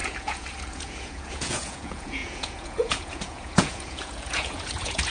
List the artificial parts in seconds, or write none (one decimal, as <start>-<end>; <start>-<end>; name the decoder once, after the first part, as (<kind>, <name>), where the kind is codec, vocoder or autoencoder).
0.0-5.1 (vocoder, Vocos)